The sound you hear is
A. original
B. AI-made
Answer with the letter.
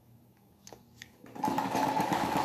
B